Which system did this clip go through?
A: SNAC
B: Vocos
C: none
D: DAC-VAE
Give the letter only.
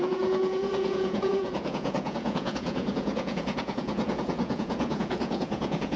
B